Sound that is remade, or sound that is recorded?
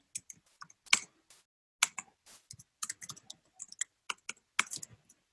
recorded